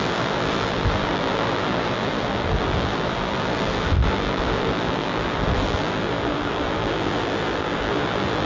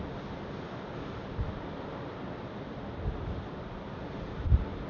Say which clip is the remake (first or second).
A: first